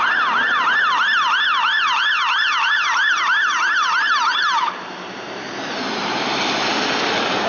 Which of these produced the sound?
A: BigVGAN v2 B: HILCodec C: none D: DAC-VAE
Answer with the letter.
A